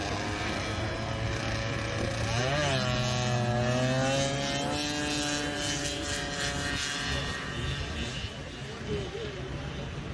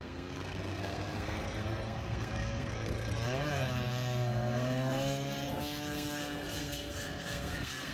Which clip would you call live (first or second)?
first